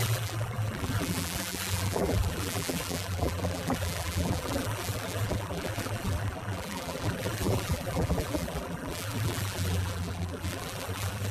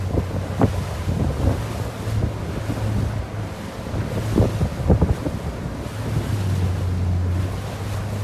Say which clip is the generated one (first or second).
first